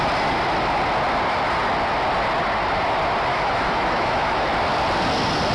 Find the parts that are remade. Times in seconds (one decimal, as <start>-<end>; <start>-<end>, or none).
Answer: 3.3-4.5